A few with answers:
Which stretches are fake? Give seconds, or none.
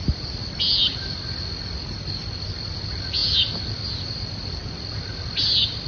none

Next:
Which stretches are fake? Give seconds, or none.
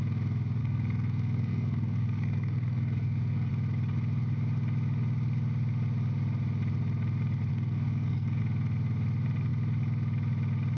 0.6-3.5 (codec, SNAC); 7.5-8.4